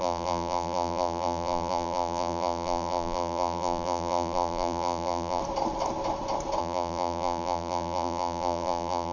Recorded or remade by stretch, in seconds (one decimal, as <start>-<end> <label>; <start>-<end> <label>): 0.0-5.4 remade; 5.4-6.6 recorded; 6.6-9.1 remade